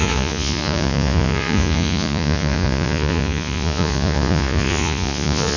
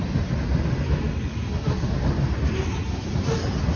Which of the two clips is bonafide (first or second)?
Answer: second